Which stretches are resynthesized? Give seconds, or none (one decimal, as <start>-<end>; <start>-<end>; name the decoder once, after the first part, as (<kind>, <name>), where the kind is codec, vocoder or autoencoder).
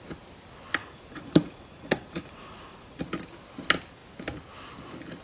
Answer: 0.8-3.0 (vocoder, Vocos)